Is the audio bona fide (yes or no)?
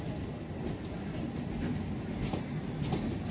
yes